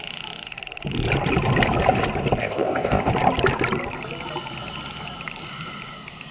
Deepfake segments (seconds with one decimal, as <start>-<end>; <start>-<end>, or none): 2.4-3.1